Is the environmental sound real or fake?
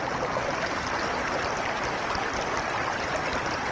real